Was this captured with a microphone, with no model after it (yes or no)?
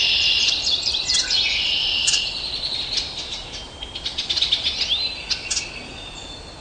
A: yes